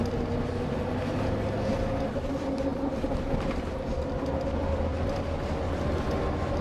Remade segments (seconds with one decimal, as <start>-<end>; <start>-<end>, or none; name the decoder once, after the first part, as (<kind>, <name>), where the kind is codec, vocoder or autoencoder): 4.6-5.2 (vocoder, BigVGAN v2)

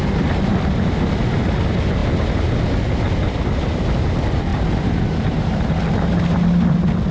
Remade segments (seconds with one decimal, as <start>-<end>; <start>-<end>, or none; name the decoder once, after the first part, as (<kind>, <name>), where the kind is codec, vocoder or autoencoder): 4.5-5.8 (vocoder, BigVGAN v2)

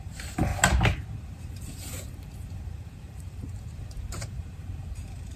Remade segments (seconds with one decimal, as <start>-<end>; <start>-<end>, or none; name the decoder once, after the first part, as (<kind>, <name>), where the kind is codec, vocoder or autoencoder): 0.0-0.5 (vocoder, BigVGAN v2); 1.2-5.4

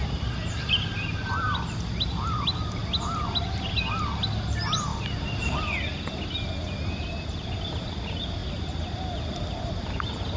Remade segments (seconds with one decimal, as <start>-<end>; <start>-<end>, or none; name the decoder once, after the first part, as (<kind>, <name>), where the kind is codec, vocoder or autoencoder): none

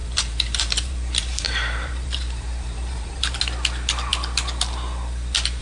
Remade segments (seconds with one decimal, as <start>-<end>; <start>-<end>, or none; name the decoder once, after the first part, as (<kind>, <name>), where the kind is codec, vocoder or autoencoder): 0.0-3.4 (vocoder, BigVGAN v2)

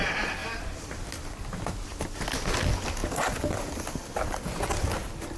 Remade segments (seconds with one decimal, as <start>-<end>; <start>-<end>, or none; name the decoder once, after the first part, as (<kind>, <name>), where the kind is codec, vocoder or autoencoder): 0.4-1.4 (vocoder, BigVGAN v2)

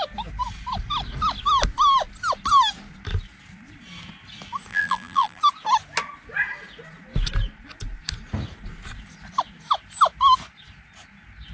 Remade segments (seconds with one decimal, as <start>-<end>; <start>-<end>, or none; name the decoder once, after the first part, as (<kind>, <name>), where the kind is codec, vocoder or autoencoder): 4.7-5.4 (vocoder, BigVGAN v2)

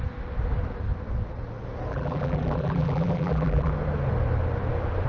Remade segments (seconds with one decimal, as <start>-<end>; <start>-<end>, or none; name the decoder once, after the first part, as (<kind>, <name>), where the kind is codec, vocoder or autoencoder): 1.9-3.7 (vocoder, BigVGAN v2)